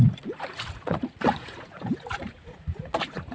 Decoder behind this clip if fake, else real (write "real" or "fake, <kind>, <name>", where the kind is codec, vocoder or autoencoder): fake, vocoder, Vocos